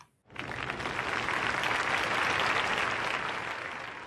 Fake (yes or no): no